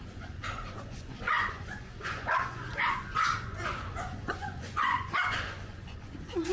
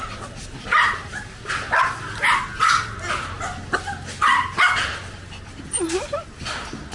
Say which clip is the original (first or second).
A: second